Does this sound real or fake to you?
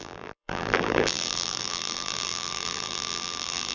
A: fake